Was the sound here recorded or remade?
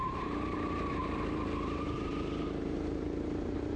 remade